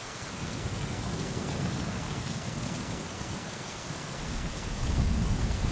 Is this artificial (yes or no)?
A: yes